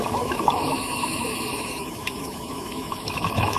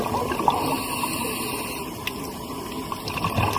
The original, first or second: second